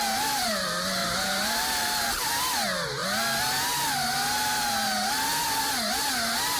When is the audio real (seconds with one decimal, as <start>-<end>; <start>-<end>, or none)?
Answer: 0.0-1.0; 2.3-6.6